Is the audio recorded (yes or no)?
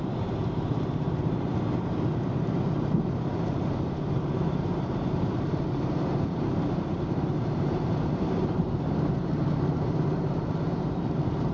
no